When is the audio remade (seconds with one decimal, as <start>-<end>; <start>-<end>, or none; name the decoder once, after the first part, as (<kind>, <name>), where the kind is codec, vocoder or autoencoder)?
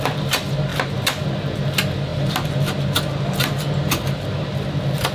none